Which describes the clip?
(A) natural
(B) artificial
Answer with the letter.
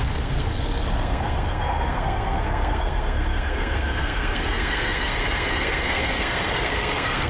B